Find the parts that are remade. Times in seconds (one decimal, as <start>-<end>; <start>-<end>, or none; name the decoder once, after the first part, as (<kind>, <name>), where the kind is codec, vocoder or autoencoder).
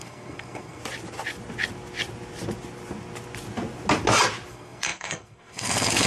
0.0-0.8 (codec, SNAC); 4.5-6.1